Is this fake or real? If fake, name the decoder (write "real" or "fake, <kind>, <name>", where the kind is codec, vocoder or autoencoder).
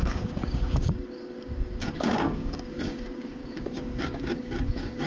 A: fake, codec, DAC